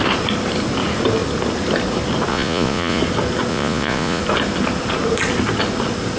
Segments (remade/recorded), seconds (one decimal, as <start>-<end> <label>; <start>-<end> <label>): 0.0-2.3 recorded; 2.3-3.0 remade; 3.0-3.5 recorded; 3.5-4.2 remade; 4.2-6.2 recorded